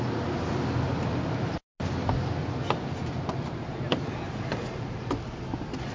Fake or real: real